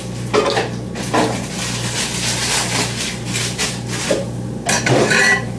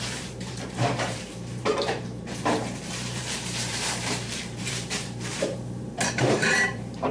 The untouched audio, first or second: first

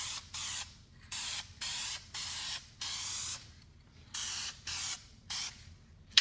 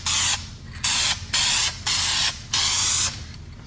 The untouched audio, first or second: second